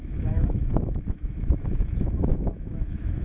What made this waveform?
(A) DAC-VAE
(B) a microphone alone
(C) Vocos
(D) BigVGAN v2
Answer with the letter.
A